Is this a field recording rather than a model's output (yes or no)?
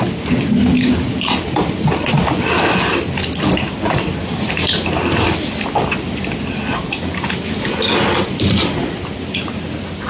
yes